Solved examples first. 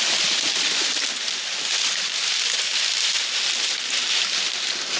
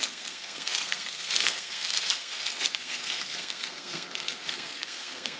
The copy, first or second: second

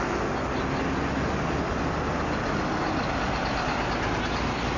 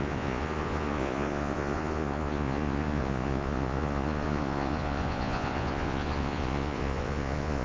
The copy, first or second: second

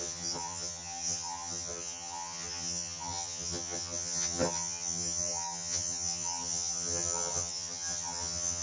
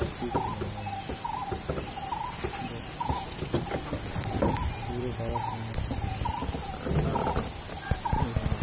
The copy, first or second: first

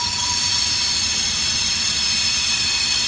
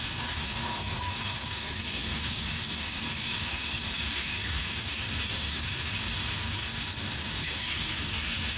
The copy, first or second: second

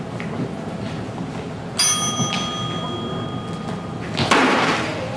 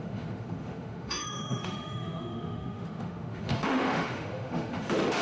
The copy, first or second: second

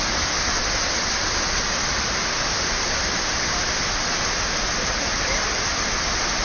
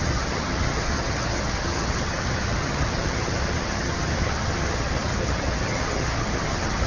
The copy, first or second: second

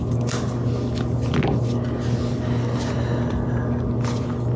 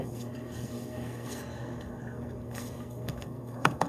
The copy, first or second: second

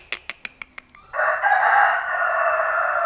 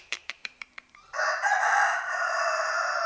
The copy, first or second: second